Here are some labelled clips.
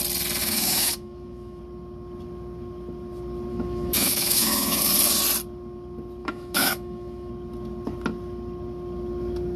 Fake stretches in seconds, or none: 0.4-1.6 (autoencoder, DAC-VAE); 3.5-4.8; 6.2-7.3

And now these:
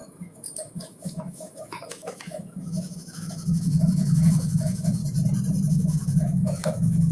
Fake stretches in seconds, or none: 0.0-5.0 (autoencoder, DAC-VAE); 5.7-7.1

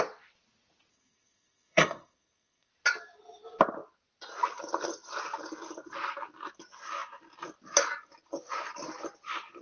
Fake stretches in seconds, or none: 0.9-2.7 (codec, SNAC)

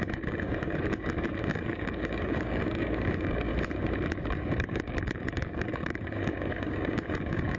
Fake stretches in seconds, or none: 0.0-3.5 (codec, DAC); 4.1-7.6

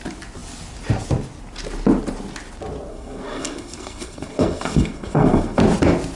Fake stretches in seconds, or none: 2.9-5.6 (codec, SNAC)

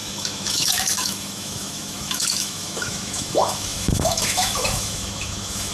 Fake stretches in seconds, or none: 0.0-5.7 (autoencoder, DAC-VAE)

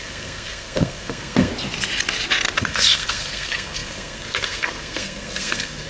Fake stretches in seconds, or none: 0.0-1.5 (codec, SNAC); 2.6-5.9